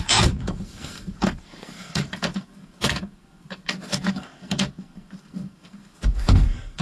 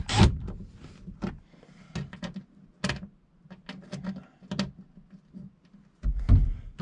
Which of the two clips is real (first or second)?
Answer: second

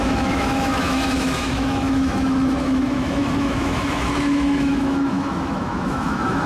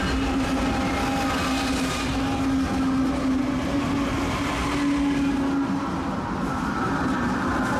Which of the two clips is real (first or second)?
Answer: second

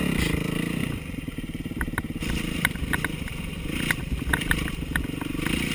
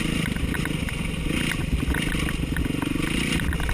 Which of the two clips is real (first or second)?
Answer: second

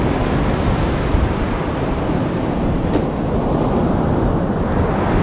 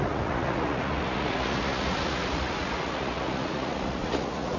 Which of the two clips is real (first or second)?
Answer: first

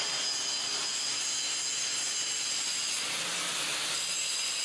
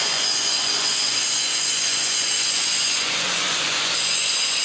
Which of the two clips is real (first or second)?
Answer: first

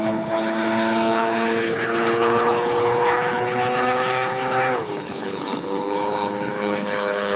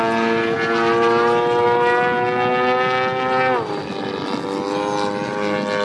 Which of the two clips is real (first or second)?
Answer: second